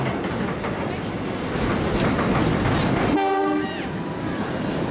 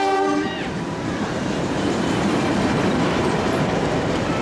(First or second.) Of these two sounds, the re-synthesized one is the second